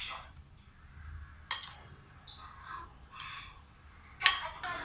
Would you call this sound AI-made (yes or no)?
no